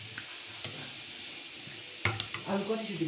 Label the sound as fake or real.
real